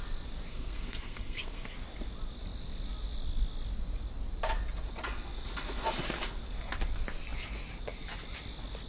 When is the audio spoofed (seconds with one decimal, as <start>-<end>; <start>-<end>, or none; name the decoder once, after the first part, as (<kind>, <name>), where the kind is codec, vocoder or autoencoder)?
0.5-1.7 (codec, SNAC)